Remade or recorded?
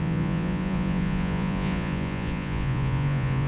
remade